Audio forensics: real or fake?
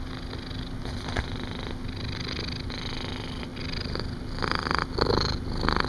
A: real